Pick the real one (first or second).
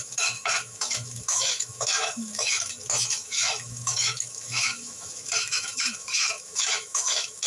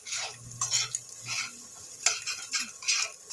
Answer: second